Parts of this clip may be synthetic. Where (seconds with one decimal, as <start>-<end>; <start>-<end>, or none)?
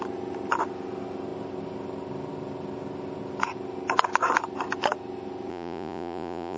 5.5-6.6